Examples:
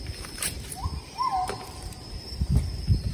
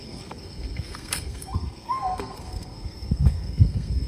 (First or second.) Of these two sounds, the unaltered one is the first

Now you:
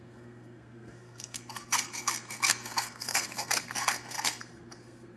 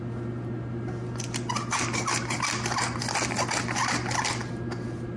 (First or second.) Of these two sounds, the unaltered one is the second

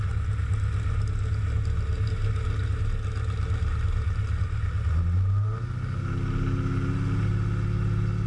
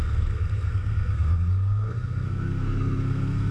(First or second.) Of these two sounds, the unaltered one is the first